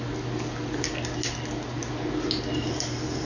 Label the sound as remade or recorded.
recorded